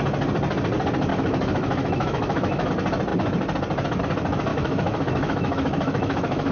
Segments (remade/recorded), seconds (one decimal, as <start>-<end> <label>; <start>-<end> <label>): 0.0-1.1 recorded; 1.1-2.7 remade; 2.7-4.5 recorded; 4.5-6.5 remade